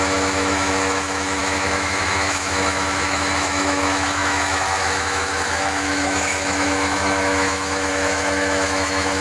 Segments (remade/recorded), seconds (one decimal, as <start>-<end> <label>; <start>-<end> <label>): 0.0-9.2 remade